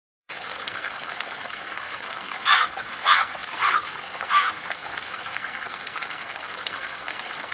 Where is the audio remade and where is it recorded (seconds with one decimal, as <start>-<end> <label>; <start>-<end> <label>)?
0.0-7.5 remade